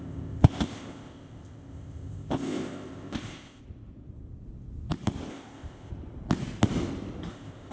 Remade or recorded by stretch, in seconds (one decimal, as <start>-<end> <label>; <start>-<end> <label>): 0.0-3.6 remade; 3.6-5.3 recorded; 5.3-5.9 remade; 5.9-7.3 recorded; 7.3-7.7 remade